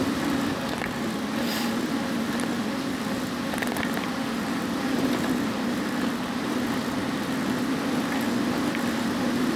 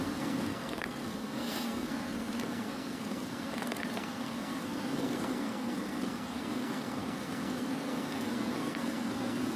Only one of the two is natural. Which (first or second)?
first